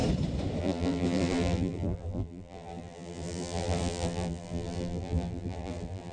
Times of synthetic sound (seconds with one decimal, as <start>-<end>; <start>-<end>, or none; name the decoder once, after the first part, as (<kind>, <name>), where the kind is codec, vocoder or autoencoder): 0.6-6.1 (vocoder, BigVGAN v2)